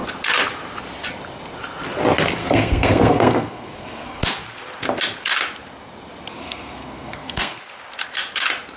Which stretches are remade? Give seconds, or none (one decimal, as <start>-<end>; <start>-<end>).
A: 2.4-4.2; 6.4-7.6

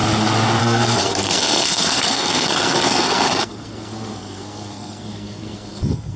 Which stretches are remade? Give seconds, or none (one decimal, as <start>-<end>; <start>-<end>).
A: 0.6-6.2

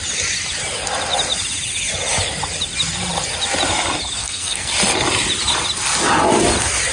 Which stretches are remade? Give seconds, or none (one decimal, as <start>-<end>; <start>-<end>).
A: 4.2-4.7